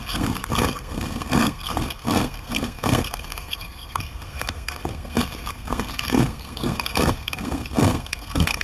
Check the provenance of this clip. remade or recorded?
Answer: remade